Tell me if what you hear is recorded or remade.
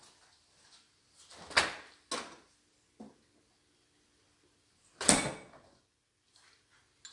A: recorded